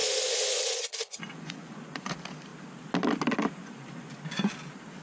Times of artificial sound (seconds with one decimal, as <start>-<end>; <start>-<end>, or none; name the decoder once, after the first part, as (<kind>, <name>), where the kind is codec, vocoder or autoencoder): 0.0-2.1 (vocoder, Vocos); 3.6-4.5